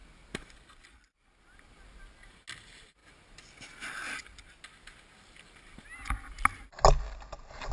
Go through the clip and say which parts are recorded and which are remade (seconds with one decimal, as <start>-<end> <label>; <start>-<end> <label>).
0.0-7.7 recorded